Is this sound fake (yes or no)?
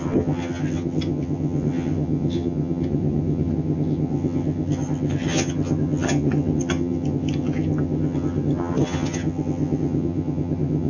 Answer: yes